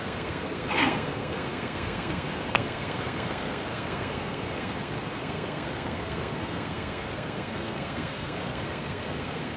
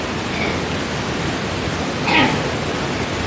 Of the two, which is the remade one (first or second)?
first